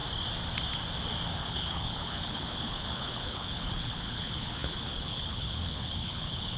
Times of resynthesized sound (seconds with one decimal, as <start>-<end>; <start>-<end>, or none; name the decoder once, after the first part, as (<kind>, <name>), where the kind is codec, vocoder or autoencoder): 1.5-6.6 (codec, HILCodec)